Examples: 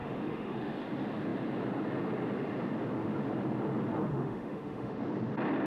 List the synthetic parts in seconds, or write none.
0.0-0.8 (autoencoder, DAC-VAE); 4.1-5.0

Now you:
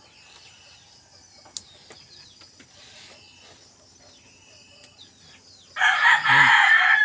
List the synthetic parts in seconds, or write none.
none

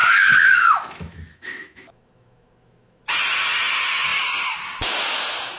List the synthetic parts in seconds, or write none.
0.0-3.0 (autoencoder, DAC-VAE)

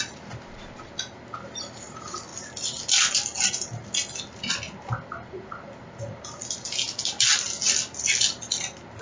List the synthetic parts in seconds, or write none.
none

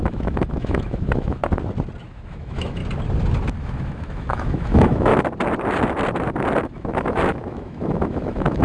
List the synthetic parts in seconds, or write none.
0.0-1.4 (autoencoder, DAC-VAE); 2.0-2.8; 3.6-5.1; 6.6-8.6

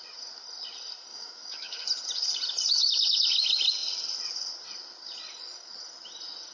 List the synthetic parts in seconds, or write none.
1.1-1.8 (autoencoder, DAC-VAE)

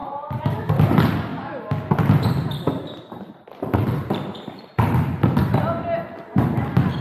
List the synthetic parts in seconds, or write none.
none

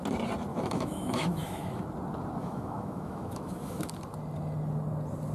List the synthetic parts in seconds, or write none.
0.5-1.8 (autoencoder, DAC-VAE); 2.4-3.9